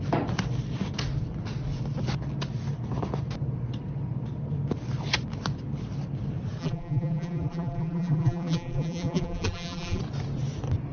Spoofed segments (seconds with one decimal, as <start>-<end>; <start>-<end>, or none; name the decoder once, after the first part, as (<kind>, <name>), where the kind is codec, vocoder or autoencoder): 6.6-10.0 (vocoder, BigVGAN v2)